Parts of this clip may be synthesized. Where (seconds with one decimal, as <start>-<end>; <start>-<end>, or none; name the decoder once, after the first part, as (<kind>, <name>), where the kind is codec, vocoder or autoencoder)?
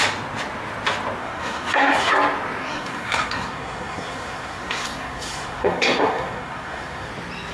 1.2-2.1 (codec, SNAC); 2.6-7.1